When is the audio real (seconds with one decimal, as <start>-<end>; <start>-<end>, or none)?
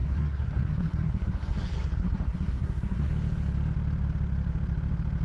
3.1-5.2